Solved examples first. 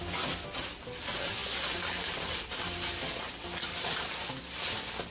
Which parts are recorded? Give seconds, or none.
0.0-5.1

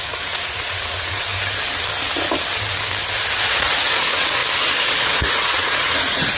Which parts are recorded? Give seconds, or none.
1.3-3.4; 4.4-5.0

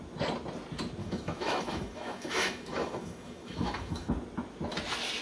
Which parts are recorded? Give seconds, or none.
0.0-1.0; 4.1-5.2

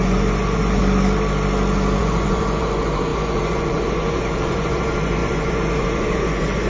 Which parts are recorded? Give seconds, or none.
0.8-2.0

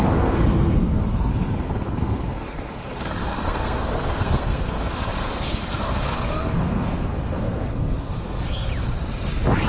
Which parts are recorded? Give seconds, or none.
8.7-9.7

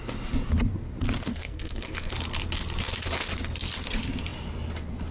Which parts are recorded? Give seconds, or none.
0.0-1.3; 2.1-5.1

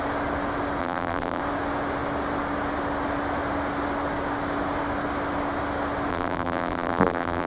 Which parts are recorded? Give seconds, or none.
0.0-0.8; 1.4-6.1